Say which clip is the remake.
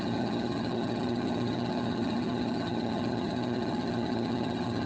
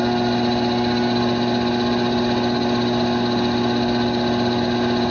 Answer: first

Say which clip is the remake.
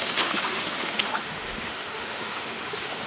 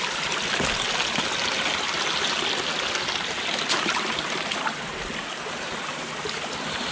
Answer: first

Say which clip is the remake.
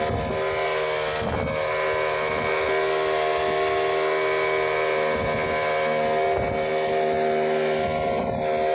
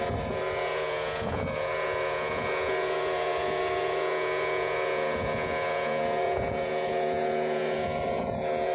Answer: second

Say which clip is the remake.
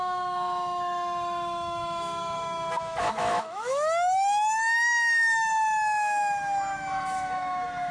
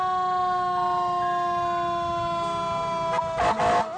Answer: first